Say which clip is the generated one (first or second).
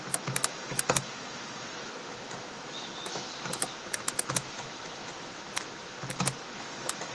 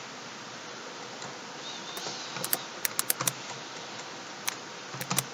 first